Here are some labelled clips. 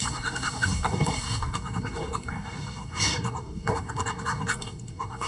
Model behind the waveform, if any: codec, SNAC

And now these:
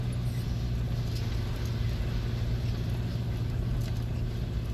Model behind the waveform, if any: none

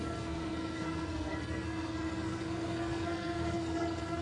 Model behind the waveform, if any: codec, SNAC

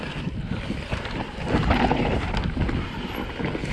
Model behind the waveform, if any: none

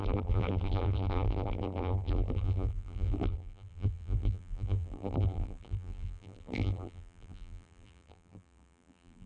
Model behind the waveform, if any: vocoder, BigVGAN v2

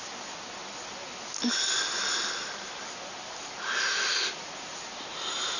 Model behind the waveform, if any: none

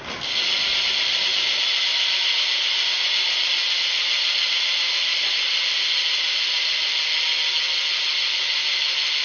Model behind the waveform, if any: none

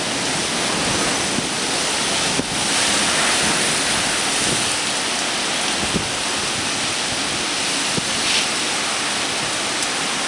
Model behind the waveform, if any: none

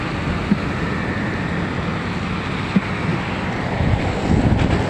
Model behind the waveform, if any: none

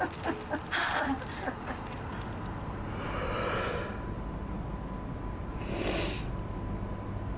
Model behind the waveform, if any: none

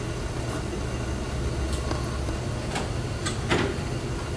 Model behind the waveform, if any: none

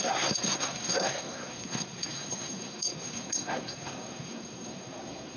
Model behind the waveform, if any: codec, SNAC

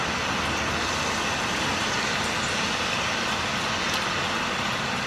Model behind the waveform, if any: none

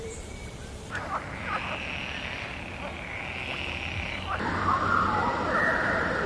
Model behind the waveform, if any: vocoder, BigVGAN v2